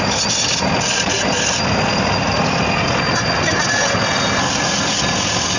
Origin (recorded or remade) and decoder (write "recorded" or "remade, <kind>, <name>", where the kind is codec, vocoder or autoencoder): recorded